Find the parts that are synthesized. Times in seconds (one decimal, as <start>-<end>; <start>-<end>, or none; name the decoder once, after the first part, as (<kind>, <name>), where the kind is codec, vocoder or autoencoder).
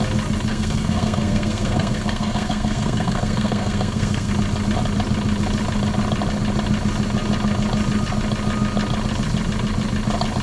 0.5-4.3 (codec, SNAC)